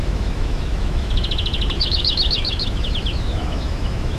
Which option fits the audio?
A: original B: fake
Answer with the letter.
B